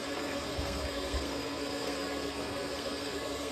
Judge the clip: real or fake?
fake